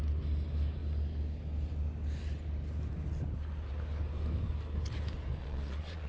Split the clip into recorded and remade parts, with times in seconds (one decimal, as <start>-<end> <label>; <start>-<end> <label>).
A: 0.0-5.4 recorded; 5.4-6.1 remade